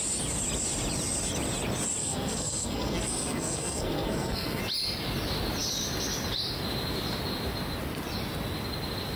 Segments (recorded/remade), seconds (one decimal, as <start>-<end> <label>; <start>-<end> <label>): 0.0-2.0 recorded; 2.0-4.6 remade; 4.6-9.2 recorded